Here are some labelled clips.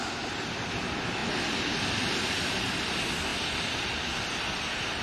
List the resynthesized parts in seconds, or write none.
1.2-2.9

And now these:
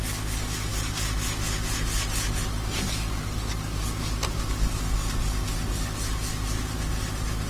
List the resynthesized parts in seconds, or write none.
none

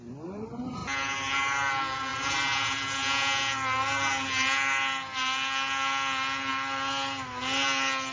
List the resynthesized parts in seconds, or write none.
none

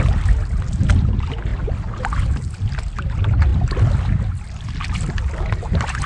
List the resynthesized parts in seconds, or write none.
none